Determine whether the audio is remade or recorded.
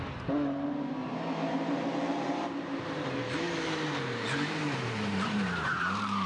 remade